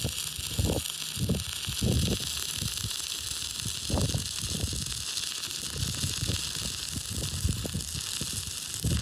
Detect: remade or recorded recorded